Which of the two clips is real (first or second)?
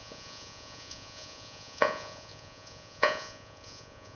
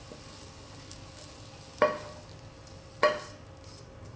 second